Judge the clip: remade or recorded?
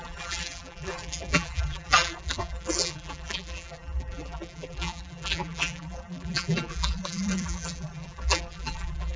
remade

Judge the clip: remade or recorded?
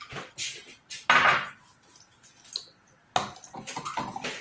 recorded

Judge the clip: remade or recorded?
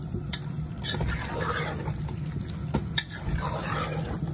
recorded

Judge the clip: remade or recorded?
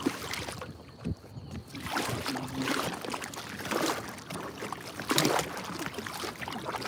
recorded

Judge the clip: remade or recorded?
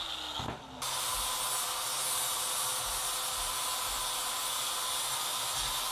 recorded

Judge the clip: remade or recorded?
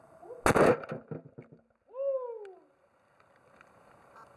recorded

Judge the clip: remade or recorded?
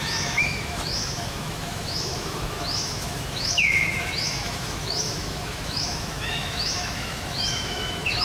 remade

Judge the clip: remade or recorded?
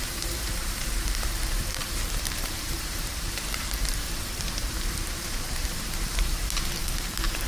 remade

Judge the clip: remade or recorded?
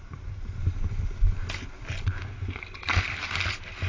recorded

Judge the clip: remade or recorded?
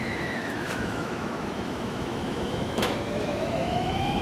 remade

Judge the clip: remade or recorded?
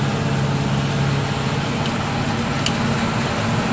recorded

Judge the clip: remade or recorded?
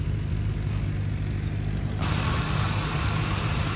recorded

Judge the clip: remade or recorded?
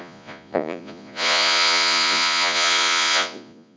remade